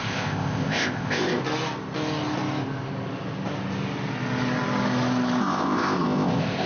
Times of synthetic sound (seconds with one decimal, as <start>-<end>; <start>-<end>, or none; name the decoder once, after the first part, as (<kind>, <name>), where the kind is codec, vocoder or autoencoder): 0.0-1.4 (codec, ZipCodec); 5.4-6.7